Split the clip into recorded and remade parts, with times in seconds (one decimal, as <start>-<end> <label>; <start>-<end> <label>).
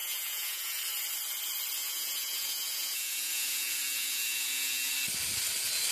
0.0-0.8 remade; 0.8-1.8 recorded; 1.8-4.9 remade; 4.9-5.9 recorded